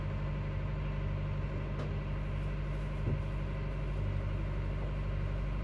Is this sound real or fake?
real